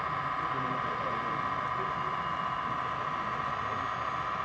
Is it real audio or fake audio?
real